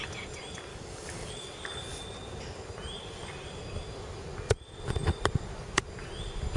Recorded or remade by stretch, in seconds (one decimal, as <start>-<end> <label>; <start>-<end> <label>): 0.0-0.7 recorded; 0.7-1.3 remade; 1.3-6.6 recorded